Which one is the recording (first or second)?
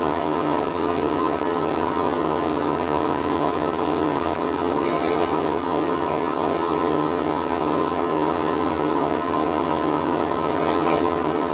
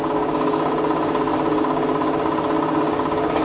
second